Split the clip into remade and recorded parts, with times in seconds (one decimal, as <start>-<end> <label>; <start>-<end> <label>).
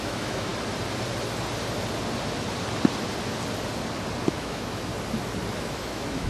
0.0-0.5 remade; 0.5-4.3 recorded; 4.3-4.9 remade; 4.9-5.6 recorded; 5.6-6.3 remade